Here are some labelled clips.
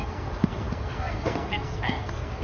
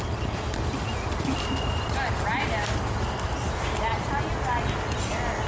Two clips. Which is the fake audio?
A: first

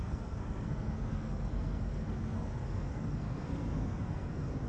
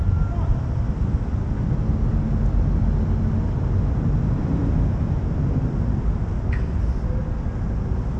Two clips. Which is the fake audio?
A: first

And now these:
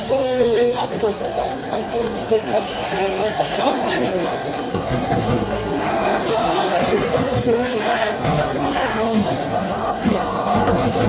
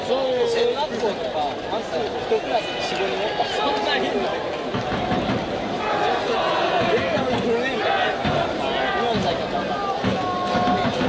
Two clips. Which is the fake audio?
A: first